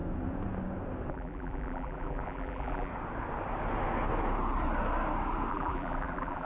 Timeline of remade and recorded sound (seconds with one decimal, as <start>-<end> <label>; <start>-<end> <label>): 0.0-1.1 recorded; 1.1-2.9 remade; 2.9-5.5 recorded; 5.5-6.4 remade